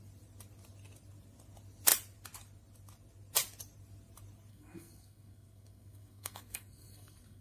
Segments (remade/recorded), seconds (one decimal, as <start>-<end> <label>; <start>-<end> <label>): 0.0-4.5 recorded; 4.5-7.4 remade